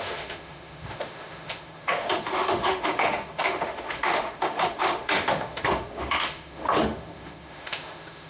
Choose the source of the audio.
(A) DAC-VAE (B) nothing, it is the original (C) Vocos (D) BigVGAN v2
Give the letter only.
A